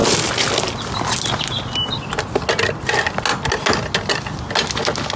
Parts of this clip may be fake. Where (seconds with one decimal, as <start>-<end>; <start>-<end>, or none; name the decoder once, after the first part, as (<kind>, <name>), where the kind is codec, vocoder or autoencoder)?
none